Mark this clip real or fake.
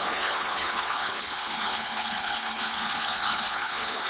fake